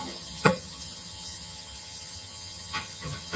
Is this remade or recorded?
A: remade